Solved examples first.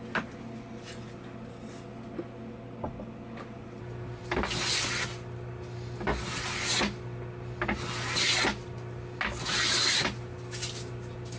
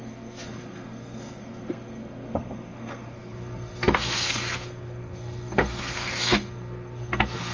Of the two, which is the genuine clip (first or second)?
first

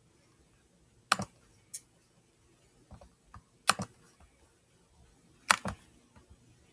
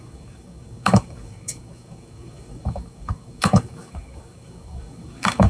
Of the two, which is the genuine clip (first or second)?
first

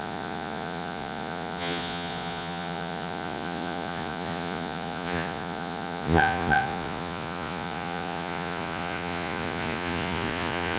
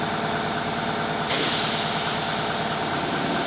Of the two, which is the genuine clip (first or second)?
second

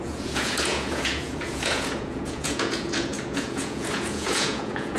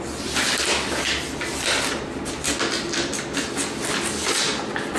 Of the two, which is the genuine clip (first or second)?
second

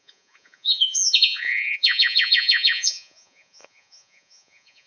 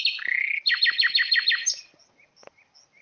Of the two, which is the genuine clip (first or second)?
second